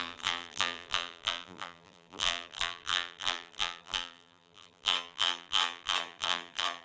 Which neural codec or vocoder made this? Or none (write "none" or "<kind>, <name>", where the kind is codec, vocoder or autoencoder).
vocoder, BigVGAN v2